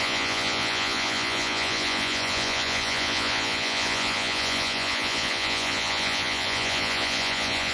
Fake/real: fake